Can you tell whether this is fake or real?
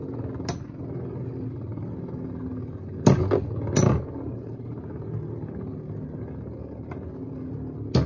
real